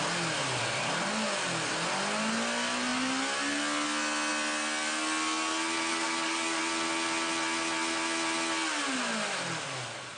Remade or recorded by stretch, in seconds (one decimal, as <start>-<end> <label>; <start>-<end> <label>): 0.0-5.9 recorded; 5.9-6.6 remade; 6.6-10.2 recorded